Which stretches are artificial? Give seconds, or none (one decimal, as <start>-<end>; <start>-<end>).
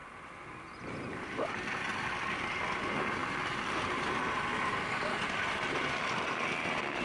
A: 1.9-2.8